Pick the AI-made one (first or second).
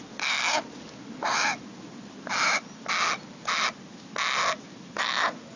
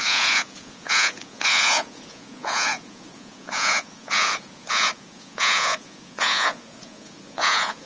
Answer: second